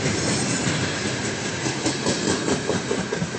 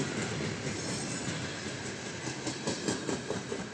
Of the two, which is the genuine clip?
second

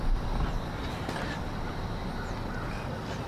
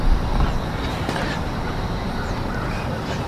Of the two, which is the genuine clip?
first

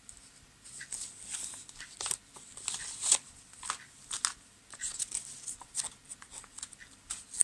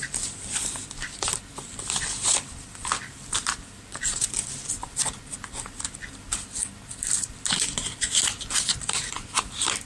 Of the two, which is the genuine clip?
first